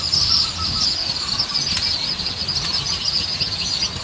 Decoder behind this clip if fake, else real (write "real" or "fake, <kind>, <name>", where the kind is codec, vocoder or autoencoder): real